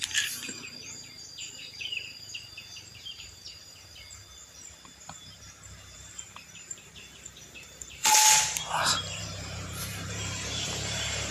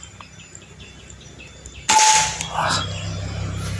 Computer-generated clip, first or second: first